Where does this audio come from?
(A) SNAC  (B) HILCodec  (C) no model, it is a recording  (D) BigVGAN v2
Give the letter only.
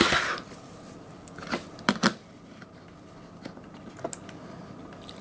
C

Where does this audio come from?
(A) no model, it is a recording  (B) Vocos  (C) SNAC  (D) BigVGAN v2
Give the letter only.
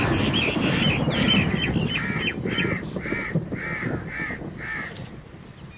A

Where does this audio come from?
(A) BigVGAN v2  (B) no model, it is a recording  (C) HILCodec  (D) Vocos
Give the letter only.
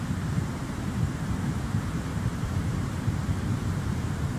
A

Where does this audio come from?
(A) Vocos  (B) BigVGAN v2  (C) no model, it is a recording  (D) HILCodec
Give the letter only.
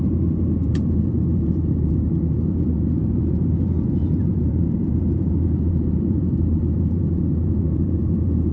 B